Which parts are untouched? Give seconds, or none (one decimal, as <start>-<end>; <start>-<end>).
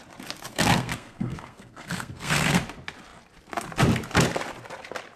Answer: 0.0-0.5; 2.6-5.2